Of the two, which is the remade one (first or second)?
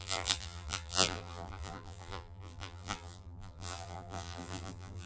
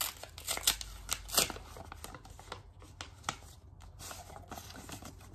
first